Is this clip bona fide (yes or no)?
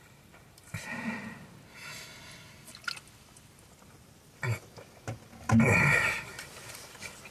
yes